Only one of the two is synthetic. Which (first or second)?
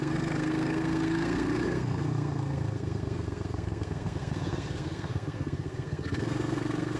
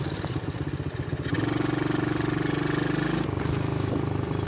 first